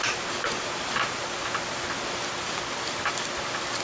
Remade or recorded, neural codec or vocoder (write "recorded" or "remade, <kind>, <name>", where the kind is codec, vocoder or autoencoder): recorded